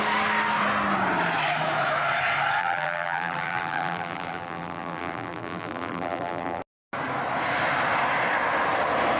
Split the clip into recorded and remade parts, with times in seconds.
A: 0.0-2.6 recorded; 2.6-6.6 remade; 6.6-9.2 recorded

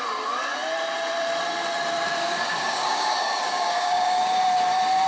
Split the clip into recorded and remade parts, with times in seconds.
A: 0.0-2.2 recorded; 2.2-4.4 remade; 4.4-5.1 recorded

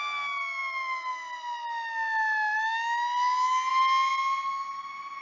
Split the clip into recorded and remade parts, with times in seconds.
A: 0.0-5.2 recorded

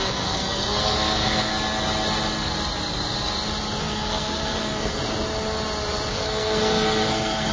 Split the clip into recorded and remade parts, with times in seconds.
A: 0.0-1.5 remade; 1.5-3.8 recorded; 3.8-5.0 remade; 5.0-6.1 recorded; 6.1-7.5 remade

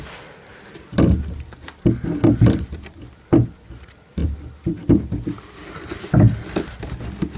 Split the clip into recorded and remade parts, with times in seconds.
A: 0.0-7.4 recorded

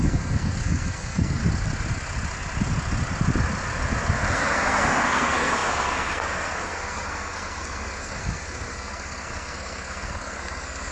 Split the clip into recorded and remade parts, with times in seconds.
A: 0.0-1.4 remade; 1.4-4.3 recorded; 4.3-10.9 remade

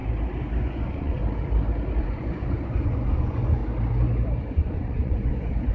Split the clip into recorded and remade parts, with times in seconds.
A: 0.0-0.6 recorded; 0.6-1.2 remade; 1.2-2.0 recorded; 2.0-3.6 remade; 3.6-4.4 recorded; 4.4-5.7 remade

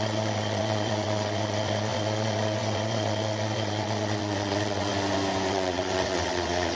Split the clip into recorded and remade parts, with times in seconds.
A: 0.0-4.9 remade; 4.9-5.5 recorded; 5.5-6.7 remade